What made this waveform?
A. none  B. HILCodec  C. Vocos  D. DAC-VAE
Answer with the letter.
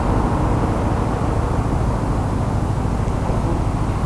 A